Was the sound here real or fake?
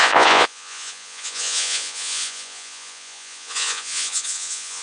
fake